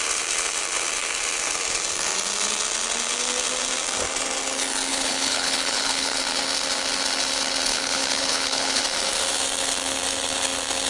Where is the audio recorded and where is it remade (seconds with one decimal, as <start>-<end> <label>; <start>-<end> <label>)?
0.0-4.9 recorded; 4.9-6.2 remade; 6.2-7.7 recorded; 7.7-8.8 remade; 8.8-10.9 recorded